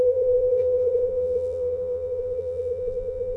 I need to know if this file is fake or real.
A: fake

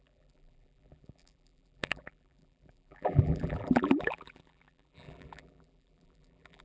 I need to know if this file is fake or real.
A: fake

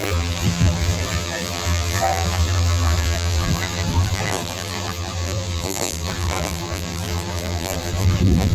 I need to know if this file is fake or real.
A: fake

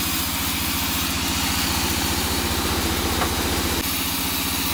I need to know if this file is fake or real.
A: real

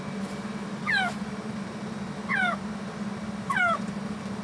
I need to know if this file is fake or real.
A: real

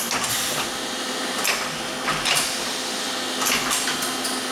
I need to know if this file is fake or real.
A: real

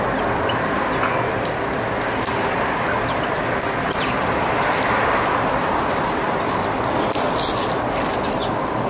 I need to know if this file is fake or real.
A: real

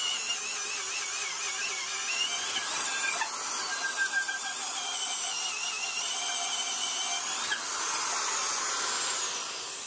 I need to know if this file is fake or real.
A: real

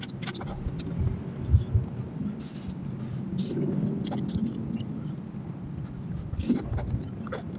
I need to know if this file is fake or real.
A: real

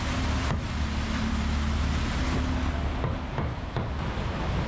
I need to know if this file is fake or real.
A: real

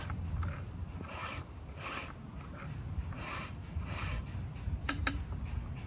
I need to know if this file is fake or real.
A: fake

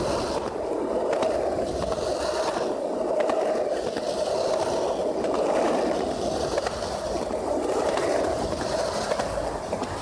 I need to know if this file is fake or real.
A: real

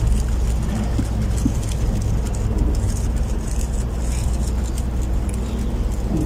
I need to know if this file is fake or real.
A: real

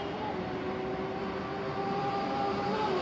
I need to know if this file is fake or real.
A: real